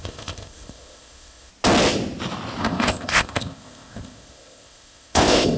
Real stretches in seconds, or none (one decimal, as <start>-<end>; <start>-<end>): 1.5-2.6